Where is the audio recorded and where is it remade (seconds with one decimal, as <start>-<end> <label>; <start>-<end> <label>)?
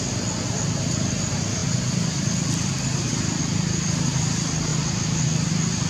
0.0-1.6 recorded; 1.6-3.4 remade; 3.4-5.9 recorded